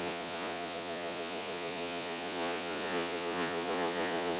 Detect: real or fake fake